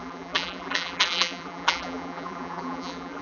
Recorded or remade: remade